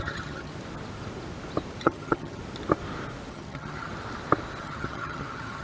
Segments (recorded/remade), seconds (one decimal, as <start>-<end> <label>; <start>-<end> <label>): 0.0-0.5 remade; 0.5-1.8 recorded; 1.8-2.4 remade; 2.4-3.3 recorded; 3.3-3.9 remade; 3.9-4.6 recorded; 4.6-5.6 remade